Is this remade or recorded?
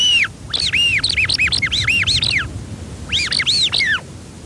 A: recorded